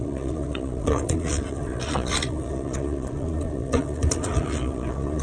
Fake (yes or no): yes